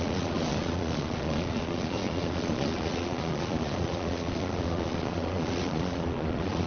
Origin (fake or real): fake